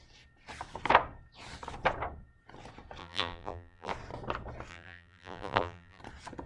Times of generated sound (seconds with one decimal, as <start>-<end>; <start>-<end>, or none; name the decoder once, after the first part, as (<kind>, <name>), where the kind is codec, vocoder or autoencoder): 3.0-3.9 (vocoder, BigVGAN v2); 4.7-6.0